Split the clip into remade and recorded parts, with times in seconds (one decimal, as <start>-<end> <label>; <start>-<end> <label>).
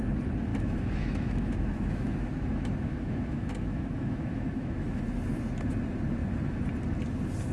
0.0-0.5 recorded; 0.5-5.0 remade; 5.0-7.5 recorded